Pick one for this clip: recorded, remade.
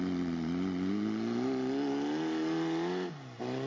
recorded